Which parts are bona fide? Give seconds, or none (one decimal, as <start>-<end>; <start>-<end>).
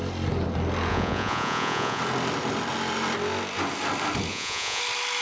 0.0-0.9; 2.0-4.3; 4.8-5.2